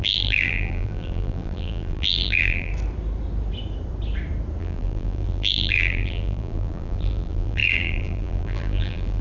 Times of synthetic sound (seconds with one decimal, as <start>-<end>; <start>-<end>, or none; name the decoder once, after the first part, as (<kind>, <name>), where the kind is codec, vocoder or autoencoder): 0.0-2.7 (vocoder, BigVGAN v2); 4.6-9.2